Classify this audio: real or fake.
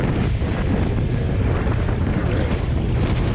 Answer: real